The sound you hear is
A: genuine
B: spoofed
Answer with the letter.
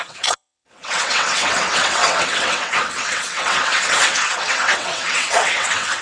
B